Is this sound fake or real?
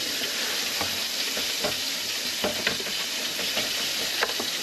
real